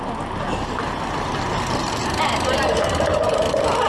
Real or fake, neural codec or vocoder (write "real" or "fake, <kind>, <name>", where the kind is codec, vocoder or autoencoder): real